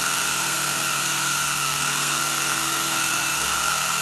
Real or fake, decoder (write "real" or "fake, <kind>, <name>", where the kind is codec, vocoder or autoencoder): fake, codec, SNAC